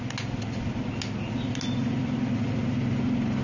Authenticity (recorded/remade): recorded